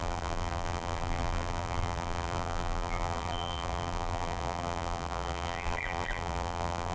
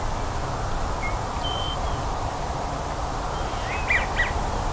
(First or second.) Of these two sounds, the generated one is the first